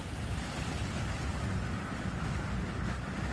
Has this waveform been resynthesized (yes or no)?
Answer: no